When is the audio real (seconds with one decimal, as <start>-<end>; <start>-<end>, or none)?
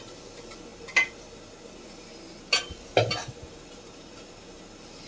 0.0-5.1